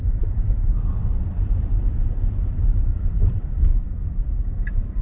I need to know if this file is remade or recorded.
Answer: remade